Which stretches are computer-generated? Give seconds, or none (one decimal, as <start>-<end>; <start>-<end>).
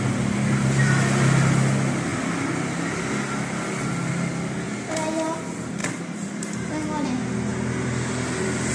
5.8-6.3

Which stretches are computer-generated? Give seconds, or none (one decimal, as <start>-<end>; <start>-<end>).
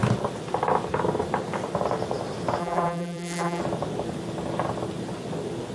2.6-3.6